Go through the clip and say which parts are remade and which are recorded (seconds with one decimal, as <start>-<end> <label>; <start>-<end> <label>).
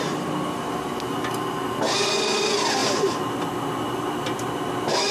0.0-2.8 recorded; 2.8-3.4 remade; 3.4-5.1 recorded